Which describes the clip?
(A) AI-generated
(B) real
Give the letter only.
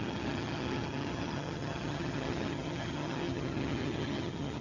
A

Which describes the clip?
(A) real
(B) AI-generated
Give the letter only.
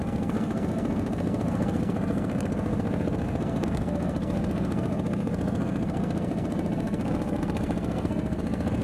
B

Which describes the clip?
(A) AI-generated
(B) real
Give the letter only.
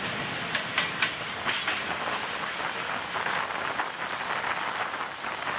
B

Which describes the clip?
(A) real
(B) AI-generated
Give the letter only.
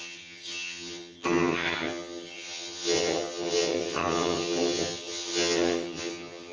B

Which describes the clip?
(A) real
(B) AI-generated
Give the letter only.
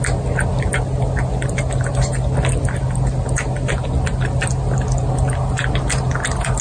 A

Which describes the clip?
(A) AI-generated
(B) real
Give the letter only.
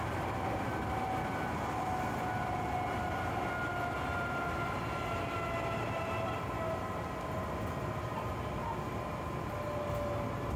B